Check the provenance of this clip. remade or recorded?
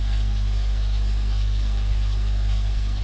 remade